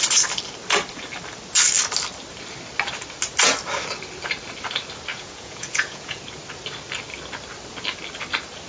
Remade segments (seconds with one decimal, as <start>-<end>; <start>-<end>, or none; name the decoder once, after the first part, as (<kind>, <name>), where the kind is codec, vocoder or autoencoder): 5.1-6.2 (vocoder, Vocos)